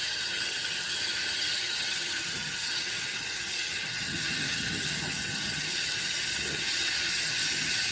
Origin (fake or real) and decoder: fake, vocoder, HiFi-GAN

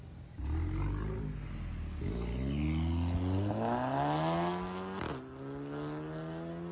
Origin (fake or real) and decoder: real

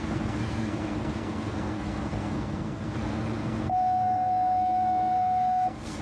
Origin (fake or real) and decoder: fake, codec, SNAC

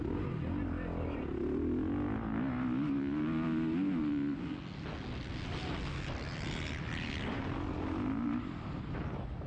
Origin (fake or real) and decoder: real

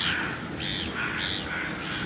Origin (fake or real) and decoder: real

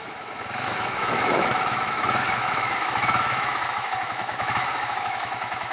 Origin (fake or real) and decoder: fake, autoencoder, DAC-VAE